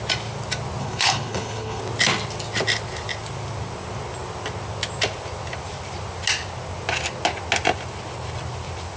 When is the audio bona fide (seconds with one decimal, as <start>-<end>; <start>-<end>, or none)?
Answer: 0.0-0.8; 1.8-9.0

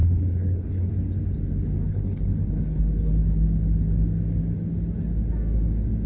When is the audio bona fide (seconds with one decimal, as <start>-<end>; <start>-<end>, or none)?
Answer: 0.9-1.9; 2.8-6.1

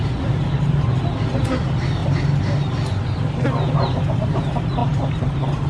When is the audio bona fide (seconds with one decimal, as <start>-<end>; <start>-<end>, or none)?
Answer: 0.0-5.7

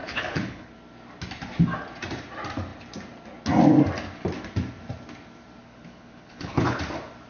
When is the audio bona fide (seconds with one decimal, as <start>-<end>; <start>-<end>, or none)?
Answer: 0.7-5.6; 6.8-7.3

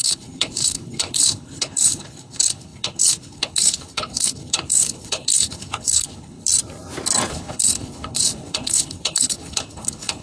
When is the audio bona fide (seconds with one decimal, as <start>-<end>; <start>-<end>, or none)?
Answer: 6.4-7.3

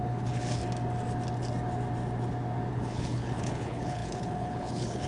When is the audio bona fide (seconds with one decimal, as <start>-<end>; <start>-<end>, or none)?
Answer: 0.6-2.7

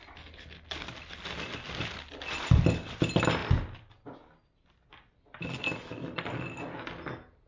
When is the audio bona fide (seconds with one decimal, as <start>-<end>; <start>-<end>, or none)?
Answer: 0.0-7.5